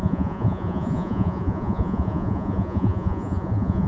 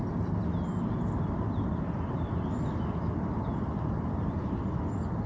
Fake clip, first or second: first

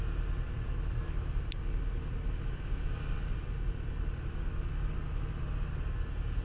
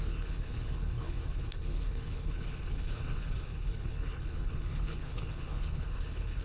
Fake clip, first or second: second